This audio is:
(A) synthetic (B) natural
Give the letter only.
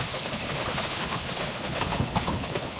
A